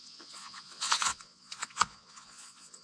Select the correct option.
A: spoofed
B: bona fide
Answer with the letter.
A